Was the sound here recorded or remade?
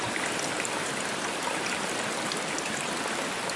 recorded